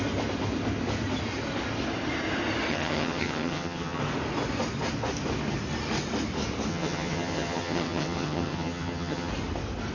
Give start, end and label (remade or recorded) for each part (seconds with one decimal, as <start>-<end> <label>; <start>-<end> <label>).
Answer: 0.0-2.7 recorded; 2.7-4.0 remade; 4.0-6.7 recorded; 6.7-9.3 remade; 9.3-9.9 recorded